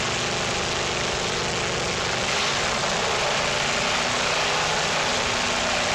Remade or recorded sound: recorded